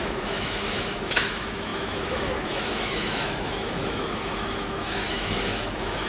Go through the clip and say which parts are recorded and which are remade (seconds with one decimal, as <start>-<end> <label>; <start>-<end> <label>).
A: 0.0-6.1 remade